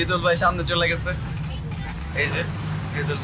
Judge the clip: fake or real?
real